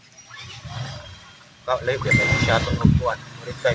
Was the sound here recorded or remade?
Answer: recorded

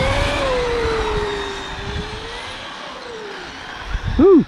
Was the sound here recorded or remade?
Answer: recorded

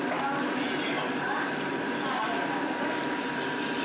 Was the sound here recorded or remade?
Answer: remade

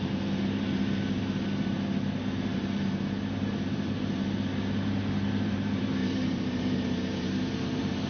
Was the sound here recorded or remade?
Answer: remade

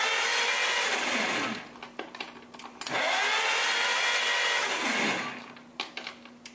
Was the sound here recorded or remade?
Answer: recorded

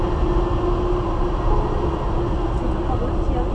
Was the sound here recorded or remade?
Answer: recorded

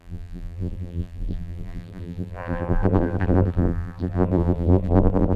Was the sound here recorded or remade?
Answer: remade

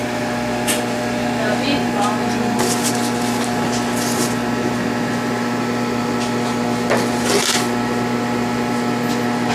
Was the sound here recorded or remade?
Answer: recorded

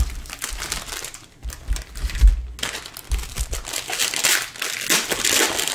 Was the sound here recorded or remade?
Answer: recorded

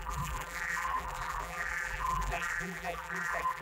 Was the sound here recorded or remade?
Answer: remade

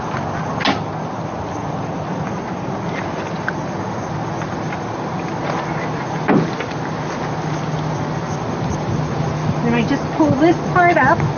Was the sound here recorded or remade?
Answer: recorded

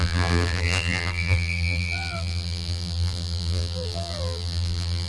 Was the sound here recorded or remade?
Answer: remade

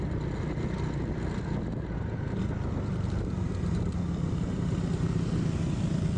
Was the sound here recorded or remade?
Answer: recorded